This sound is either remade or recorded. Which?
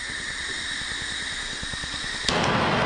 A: recorded